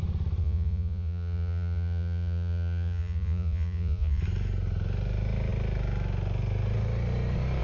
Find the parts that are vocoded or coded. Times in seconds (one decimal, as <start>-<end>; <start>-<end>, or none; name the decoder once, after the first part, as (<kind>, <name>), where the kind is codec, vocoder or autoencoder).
0.4-4.2 (vocoder, Vocos)